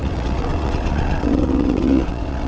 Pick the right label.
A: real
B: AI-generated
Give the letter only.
B